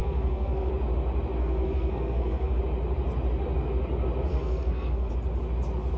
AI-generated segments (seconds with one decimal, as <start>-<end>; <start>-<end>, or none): 0.0-0.7; 1.4-2.6; 4.3-5.1